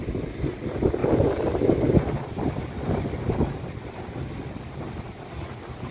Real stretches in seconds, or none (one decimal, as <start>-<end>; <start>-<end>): 0.0-5.9